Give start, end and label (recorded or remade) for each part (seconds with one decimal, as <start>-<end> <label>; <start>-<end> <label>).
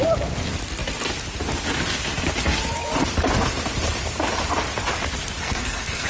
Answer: 0.0-5.4 recorded; 5.4-6.1 remade